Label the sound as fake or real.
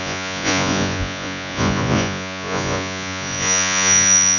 fake